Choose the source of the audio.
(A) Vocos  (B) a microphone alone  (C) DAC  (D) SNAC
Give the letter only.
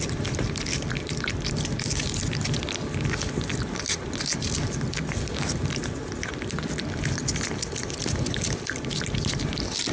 B